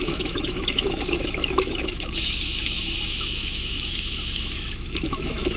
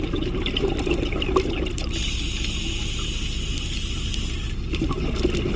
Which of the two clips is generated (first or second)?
first